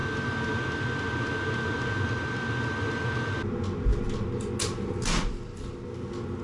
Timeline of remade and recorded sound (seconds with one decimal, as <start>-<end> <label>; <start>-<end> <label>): 0.0-6.4 recorded